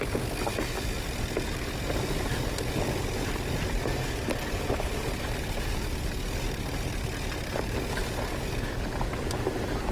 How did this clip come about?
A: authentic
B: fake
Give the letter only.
A